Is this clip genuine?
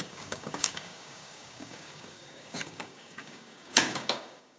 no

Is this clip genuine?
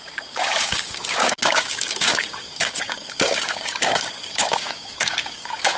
no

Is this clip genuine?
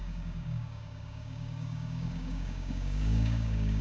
no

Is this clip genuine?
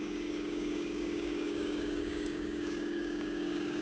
no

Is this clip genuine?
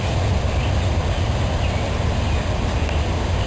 yes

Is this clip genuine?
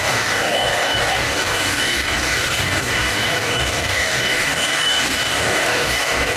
no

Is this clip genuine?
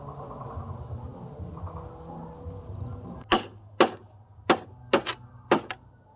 yes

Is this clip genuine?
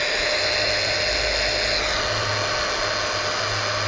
yes